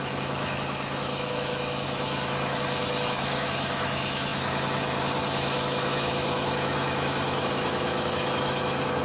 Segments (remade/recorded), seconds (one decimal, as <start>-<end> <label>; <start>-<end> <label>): 0.0-9.0 remade